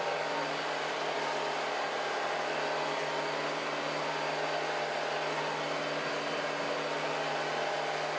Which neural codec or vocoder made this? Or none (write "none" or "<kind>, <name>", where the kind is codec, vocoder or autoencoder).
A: none